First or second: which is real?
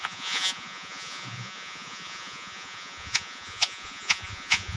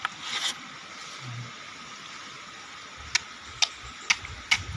second